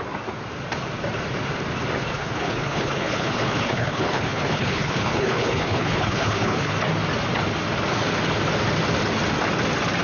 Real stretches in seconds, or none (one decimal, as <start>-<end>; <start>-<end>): 0.0-2.1; 6.7-10.0